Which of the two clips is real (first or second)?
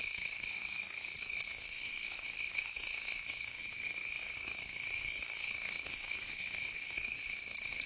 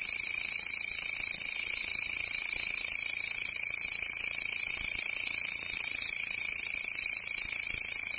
second